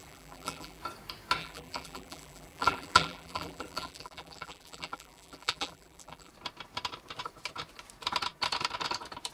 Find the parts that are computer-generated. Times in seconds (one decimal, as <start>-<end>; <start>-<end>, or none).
0.0-0.8; 1.4-6.3